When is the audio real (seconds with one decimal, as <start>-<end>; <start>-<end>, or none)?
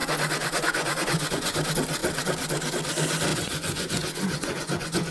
1.6-3.3